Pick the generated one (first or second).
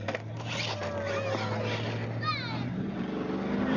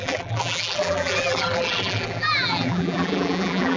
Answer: second